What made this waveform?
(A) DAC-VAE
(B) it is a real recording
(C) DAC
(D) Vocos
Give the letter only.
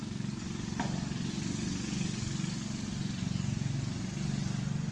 B